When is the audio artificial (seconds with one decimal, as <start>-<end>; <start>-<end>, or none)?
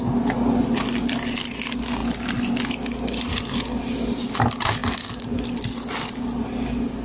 none